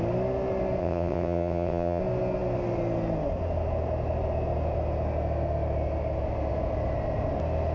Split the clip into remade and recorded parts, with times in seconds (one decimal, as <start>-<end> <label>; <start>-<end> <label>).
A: 0.0-0.8 recorded; 0.8-2.0 remade; 2.0-7.7 recorded